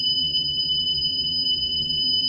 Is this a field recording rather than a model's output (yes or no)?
no